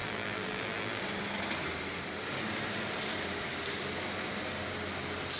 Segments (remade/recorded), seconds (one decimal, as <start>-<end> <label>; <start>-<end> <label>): 0.0-1.0 remade; 1.0-5.4 recorded